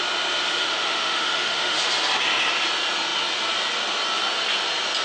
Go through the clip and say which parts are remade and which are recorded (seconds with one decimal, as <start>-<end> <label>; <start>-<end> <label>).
0.0-0.6 recorded; 0.6-1.8 remade; 1.8-5.0 recorded

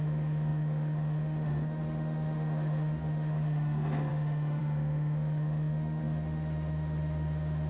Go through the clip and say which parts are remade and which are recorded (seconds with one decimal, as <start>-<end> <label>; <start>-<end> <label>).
0.0-7.7 remade